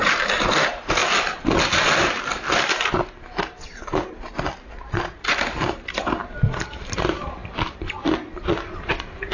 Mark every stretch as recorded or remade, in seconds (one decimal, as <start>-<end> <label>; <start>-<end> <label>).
0.0-1.0 remade; 1.0-3.6 recorded; 3.6-6.2 remade; 6.2-6.7 recorded; 6.7-7.4 remade; 7.4-8.7 recorded; 8.7-9.3 remade